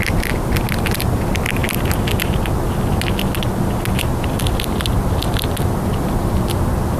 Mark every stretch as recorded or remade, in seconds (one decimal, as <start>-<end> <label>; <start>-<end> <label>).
0.0-7.0 recorded